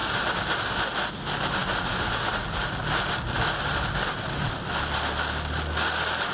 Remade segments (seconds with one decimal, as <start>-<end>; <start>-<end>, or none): 1.6-2.8